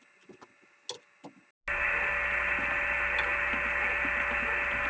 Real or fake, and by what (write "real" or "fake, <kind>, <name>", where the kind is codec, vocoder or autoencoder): real